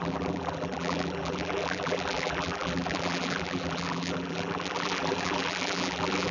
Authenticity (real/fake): fake